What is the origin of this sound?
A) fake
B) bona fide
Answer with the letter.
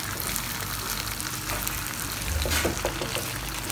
B